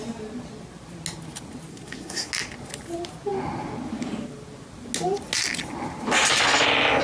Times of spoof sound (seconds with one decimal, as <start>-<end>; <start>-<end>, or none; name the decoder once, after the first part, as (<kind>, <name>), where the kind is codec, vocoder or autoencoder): 1.7-2.3 (codec, SNAC)